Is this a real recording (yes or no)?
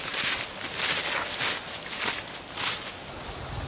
yes